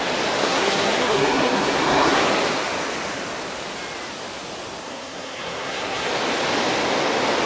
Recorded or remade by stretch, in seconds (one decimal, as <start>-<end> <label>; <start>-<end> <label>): 0.0-0.4 recorded; 0.4-2.2 remade; 2.2-4.8 recorded; 4.8-6.1 remade; 6.1-7.5 recorded